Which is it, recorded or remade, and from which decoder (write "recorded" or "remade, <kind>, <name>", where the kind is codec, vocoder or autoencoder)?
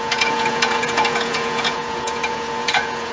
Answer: remade, vocoder, Vocos